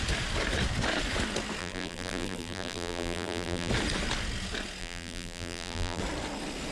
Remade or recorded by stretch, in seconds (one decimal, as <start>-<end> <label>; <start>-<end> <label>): 0.0-1.6 recorded; 1.6-3.7 remade; 3.7-4.8 recorded; 4.8-6.0 remade; 6.0-6.7 recorded